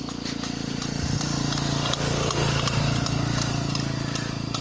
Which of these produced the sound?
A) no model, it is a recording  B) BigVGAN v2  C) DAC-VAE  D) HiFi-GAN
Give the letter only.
B